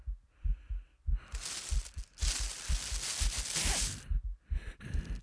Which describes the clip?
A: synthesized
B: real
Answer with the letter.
B